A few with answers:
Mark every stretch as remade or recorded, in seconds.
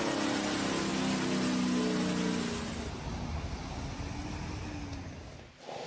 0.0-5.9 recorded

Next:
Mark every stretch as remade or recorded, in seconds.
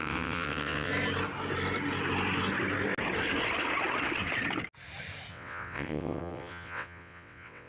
0.0-0.9 remade; 0.9-5.3 recorded; 5.3-7.7 remade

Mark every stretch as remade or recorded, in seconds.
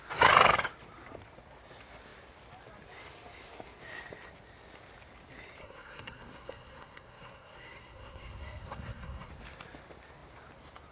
0.0-5.6 recorded; 5.6-9.3 remade; 9.3-10.9 recorded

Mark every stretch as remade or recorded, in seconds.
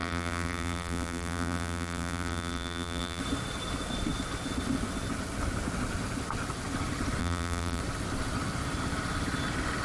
0.0-3.2 remade; 3.2-7.2 recorded; 7.2-7.8 remade; 7.8-9.8 recorded